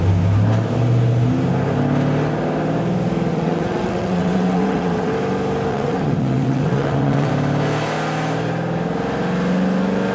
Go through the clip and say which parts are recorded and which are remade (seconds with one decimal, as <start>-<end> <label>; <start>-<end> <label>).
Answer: 0.0-3.3 recorded; 3.3-5.1 remade; 5.1-5.7 recorded; 5.7-7.3 remade; 7.3-10.1 recorded